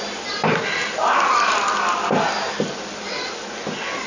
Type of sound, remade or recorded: recorded